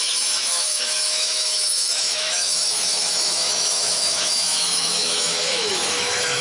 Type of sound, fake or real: fake